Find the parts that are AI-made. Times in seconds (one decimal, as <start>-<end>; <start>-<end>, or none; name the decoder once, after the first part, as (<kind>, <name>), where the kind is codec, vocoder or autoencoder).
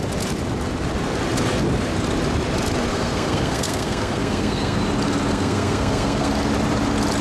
2.9-4.8 (codec, SNAC); 5.3-6.3